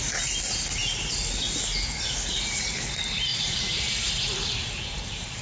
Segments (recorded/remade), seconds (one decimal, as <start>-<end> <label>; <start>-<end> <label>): 0.0-3.3 recorded; 3.3-4.1 remade; 4.1-4.6 recorded; 4.6-5.4 remade